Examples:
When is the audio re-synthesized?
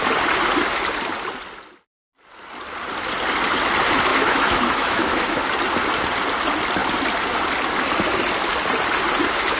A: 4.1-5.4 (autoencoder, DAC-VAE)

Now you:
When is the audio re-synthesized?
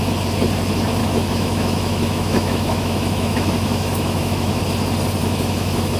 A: 1.0-4.6 (autoencoder, DAC-VAE); 5.2-6.0